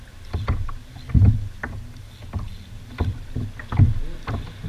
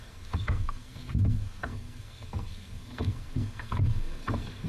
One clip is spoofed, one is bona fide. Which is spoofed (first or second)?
second